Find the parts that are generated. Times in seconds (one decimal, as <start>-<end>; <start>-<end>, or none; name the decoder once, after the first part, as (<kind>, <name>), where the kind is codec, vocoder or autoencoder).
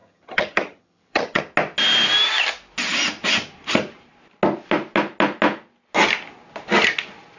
0.0-1.4 (vocoder, HiFi-GAN)